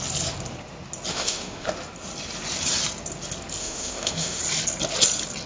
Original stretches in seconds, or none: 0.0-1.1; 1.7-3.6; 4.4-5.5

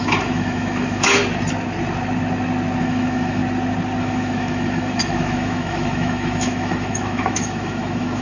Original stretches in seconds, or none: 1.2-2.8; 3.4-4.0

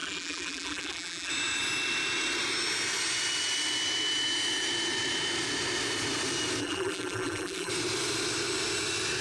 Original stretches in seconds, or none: 1.3-6.6; 7.7-9.2

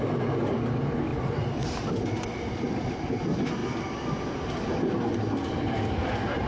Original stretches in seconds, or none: 0.0-1.1; 3.2-6.5